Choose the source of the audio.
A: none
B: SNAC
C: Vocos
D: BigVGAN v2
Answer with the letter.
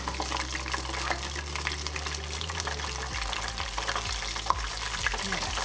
A